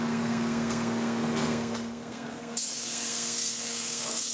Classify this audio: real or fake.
fake